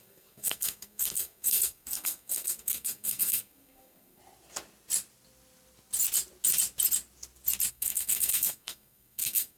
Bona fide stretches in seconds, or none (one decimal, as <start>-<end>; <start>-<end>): 4.2-7.7